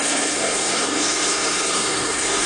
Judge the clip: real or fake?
fake